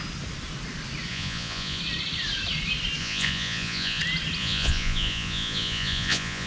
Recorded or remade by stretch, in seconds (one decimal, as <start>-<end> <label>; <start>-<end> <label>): 0.0-1.1 recorded; 1.1-1.8 remade; 1.8-3.0 recorded; 3.0-4.0 remade; 4.0-4.4 recorded; 4.4-6.5 remade